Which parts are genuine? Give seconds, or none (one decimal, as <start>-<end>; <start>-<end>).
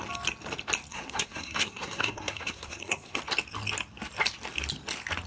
0.0-0.9; 3.2-5.3